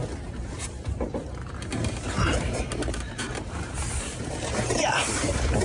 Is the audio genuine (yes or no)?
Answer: no